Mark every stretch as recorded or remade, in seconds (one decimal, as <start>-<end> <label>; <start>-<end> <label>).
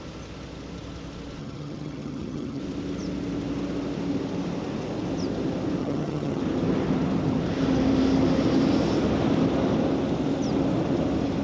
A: 0.0-1.4 recorded; 1.4-2.6 remade; 2.6-5.8 recorded; 5.8-6.4 remade; 6.4-11.4 recorded